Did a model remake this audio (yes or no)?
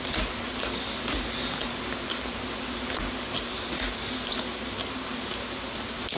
no